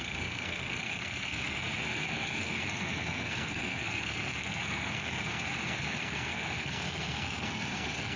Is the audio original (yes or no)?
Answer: no